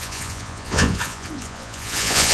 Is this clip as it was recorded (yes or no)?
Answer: no